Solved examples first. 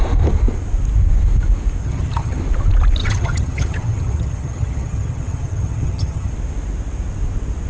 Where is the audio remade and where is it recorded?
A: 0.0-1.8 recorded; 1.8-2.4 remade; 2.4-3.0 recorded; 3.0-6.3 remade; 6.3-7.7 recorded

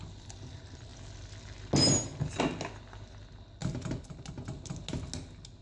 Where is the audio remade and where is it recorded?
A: 0.0-5.6 recorded

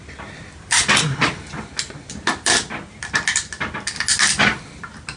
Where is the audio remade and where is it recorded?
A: 0.0-5.2 recorded

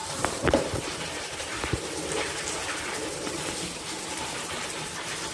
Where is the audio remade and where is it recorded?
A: 0.0-2.7 remade; 2.7-3.1 recorded; 3.1-4.5 remade; 4.5-5.3 recorded